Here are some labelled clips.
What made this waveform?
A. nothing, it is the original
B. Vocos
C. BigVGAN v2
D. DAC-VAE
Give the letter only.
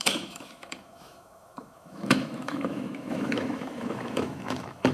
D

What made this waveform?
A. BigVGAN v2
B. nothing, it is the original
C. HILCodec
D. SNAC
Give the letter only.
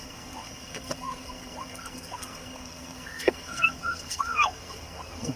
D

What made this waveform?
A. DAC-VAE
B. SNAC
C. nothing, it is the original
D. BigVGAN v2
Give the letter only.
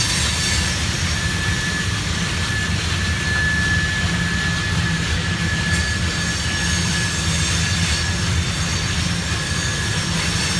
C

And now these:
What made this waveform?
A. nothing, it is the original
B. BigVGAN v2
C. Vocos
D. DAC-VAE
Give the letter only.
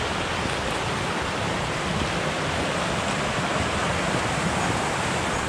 A